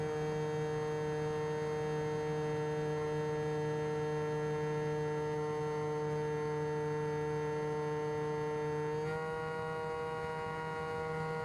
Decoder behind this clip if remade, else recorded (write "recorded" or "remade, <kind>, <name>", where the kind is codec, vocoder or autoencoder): recorded